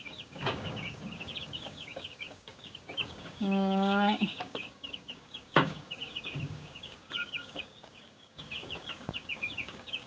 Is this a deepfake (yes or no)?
yes